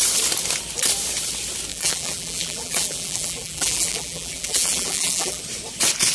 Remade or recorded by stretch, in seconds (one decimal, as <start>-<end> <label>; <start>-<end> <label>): 0.0-1.7 recorded; 1.7-5.4 remade; 5.4-6.1 recorded